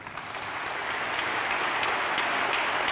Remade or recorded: recorded